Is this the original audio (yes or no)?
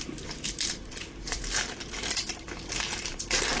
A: no